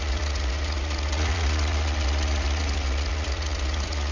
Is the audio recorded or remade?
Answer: remade